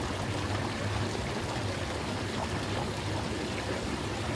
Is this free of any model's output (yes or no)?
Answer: yes